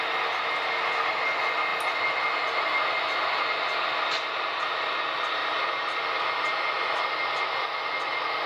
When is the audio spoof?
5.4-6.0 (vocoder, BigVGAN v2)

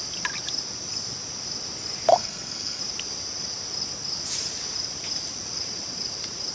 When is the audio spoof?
2.1-2.8 (codec, SNAC)

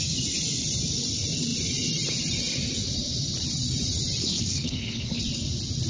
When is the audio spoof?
4.2-5.2 (codec, HILCodec)

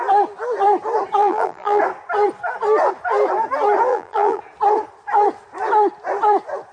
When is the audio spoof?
1.2-1.8 (vocoder, BigVGAN v2); 3.9-4.4

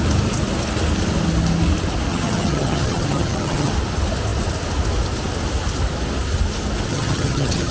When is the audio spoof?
2.1-3.7 (vocoder, HiFi-GAN); 6.9-7.7

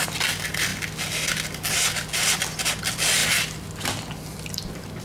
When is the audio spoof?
none

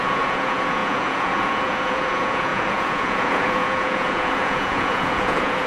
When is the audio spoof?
0.0-5.7 (vocoder, Vocos)

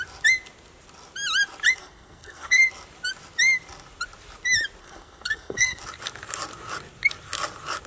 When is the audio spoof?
1.8-2.6 (codec, SNAC); 4.8-5.8